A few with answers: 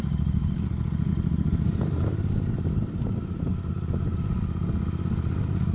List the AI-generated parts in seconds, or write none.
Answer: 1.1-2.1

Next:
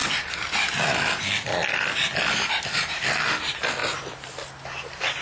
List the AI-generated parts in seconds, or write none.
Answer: none

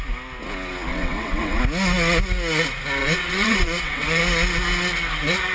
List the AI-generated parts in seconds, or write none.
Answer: 0.9-1.6; 3.0-4.2

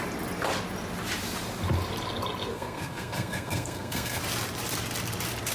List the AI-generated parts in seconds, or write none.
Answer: 2.5-4.2

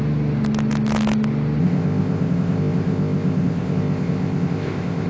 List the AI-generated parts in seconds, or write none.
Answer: 1.6-5.1

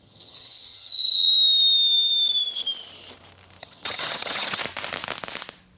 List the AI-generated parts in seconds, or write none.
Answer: 0.0-1.3; 3.6-4.6